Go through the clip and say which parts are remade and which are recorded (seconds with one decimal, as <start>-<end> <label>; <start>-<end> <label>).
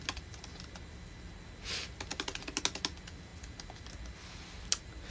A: 0.0-5.1 recorded